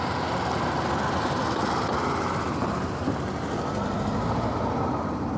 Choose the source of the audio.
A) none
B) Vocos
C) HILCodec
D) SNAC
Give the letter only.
A